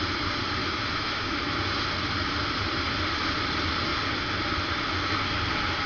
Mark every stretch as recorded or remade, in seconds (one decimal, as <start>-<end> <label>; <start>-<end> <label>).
0.0-0.6 recorded; 0.6-1.4 remade; 1.4-5.9 recorded